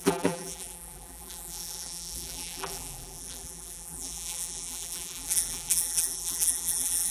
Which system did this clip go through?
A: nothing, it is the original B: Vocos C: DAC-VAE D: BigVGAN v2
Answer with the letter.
D